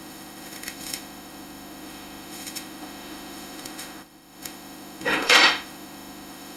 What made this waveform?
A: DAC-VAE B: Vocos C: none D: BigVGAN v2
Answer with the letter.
A